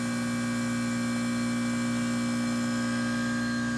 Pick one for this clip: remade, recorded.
recorded